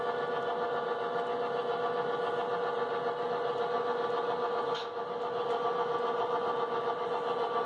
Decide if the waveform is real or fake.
real